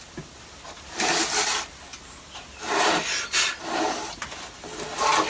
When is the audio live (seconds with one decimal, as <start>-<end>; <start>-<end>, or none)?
0.0-5.3